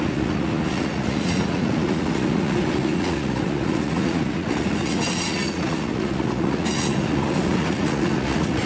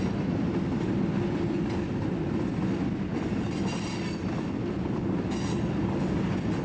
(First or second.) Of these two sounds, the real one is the second